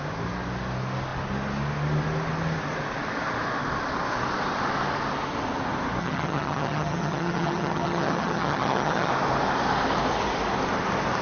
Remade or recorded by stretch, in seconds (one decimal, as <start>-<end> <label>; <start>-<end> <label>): 0.0-6.0 recorded; 6.0-9.1 remade; 9.1-11.2 recorded